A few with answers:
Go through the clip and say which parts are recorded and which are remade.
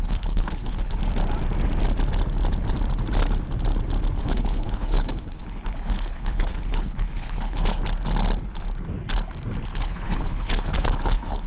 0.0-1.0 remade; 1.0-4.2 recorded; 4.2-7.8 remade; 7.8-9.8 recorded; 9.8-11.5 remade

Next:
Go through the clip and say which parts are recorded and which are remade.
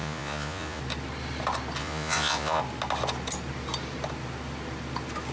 0.0-0.8 remade; 0.8-1.8 recorded; 1.8-2.6 remade; 2.6-5.3 recorded